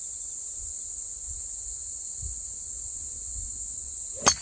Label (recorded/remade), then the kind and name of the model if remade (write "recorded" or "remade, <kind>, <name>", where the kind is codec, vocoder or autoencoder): recorded